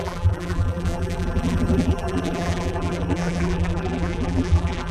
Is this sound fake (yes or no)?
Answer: yes